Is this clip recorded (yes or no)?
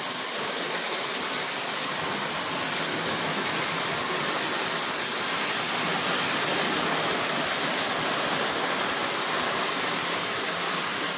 yes